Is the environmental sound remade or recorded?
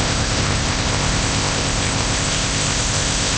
remade